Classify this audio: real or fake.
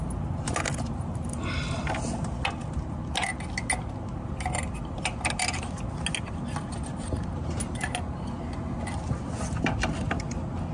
real